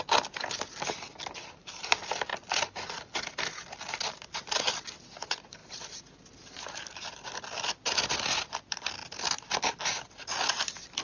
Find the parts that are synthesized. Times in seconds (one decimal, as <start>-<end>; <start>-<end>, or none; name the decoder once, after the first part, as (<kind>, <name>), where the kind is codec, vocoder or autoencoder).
none